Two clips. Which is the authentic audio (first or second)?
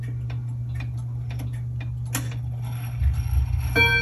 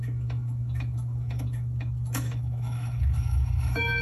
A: first